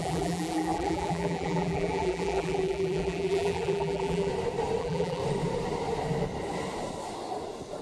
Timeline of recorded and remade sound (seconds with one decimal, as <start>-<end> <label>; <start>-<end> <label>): 0.0-4.3 remade; 4.3-4.8 recorded; 4.8-5.2 remade; 5.2-7.8 recorded

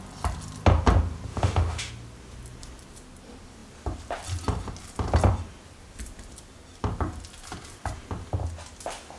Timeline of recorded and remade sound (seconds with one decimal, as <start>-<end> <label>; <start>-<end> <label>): 0.0-1.3 recorded; 1.3-1.9 remade; 1.9-9.2 recorded

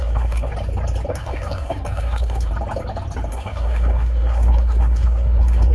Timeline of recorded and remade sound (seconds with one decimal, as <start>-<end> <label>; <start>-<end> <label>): 0.0-0.5 remade; 0.5-1.1 recorded; 1.1-2.5 remade; 2.5-3.3 recorded; 3.3-5.7 remade

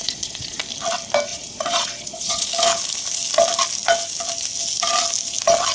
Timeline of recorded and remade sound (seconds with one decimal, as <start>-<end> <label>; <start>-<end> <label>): 0.0-0.6 remade; 0.6-1.3 recorded; 1.3-2.5 remade; 2.5-5.7 recorded